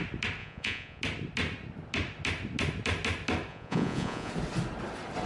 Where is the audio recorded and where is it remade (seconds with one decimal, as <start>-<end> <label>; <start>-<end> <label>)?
0.0-0.4 recorded; 0.4-1.0 remade; 1.0-3.5 recorded; 3.5-4.3 remade; 4.3-5.3 recorded